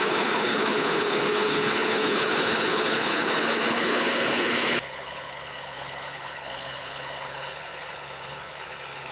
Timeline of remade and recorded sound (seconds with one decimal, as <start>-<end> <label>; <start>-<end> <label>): 0.0-9.1 remade